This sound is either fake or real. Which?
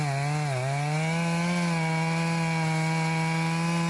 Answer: real